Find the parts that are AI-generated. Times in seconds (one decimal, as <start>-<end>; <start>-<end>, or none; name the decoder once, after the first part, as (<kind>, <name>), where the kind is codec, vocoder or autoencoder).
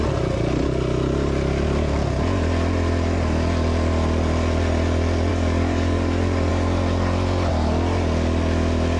5.3-6.5 (codec, DAC)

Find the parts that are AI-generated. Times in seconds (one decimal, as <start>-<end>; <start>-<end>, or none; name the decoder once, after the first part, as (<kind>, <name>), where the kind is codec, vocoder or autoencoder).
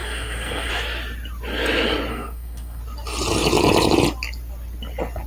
0.0-0.7 (codec, SNAC); 2.1-2.8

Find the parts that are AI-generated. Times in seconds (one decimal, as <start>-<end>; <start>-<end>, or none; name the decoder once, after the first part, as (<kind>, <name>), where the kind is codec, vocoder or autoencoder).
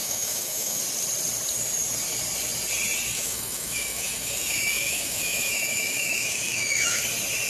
0.0-0.8 (autoencoder, DAC-VAE); 3.1-7.0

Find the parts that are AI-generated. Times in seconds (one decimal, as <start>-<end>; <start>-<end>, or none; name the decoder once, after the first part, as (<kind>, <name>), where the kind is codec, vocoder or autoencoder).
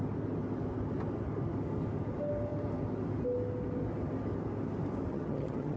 5.1-5.8 (vocoder, HiFi-GAN)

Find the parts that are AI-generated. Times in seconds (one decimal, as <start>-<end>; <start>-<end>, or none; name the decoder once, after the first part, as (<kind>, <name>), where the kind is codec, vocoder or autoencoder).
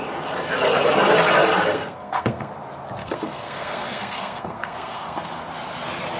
1.7-2.5 (codec, SNAC); 3.0-5.3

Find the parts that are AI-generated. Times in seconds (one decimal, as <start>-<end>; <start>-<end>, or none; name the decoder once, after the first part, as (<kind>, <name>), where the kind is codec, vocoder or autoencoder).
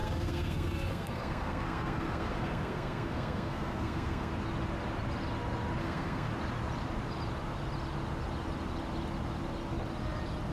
0.0-4.3 (codec, SNAC); 5.8-6.3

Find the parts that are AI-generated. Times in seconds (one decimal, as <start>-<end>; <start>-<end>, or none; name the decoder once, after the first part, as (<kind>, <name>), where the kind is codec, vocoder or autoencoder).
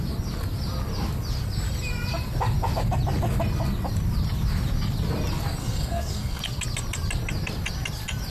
5.6-6.4 (codec, SNAC)